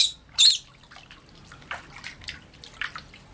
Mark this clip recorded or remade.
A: recorded